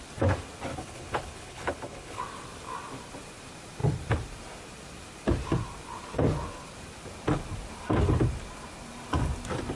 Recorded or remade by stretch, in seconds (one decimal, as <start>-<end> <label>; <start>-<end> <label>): 0.0-0.7 recorded; 0.7-2.2 remade; 2.2-9.8 recorded